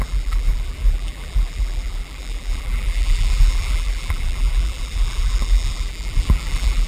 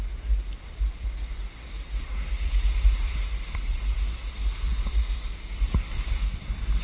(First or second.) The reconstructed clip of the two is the first